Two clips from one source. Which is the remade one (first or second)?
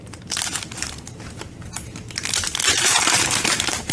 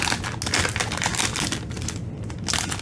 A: first